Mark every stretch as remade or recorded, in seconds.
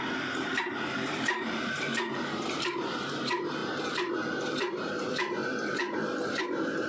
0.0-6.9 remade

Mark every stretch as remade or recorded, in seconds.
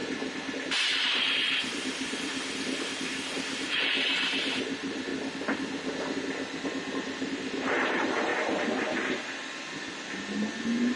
0.0-5.1 remade; 5.1-6.9 recorded; 6.9-8.3 remade; 8.3-11.0 recorded